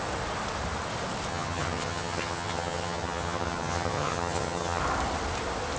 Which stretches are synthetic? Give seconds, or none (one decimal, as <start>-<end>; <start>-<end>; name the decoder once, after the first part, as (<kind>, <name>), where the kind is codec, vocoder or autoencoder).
1.3-4.8 (vocoder, HiFi-GAN)